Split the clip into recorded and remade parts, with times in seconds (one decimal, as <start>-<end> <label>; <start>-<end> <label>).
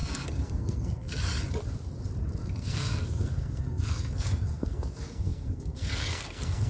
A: 0.0-1.2 remade; 1.2-2.4 recorded; 2.4-6.7 remade